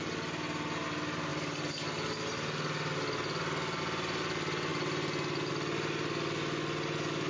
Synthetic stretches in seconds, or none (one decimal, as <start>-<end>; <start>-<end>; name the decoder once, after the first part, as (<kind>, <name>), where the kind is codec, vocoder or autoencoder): none